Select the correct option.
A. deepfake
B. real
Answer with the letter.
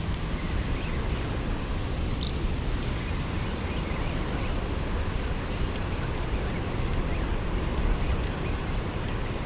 B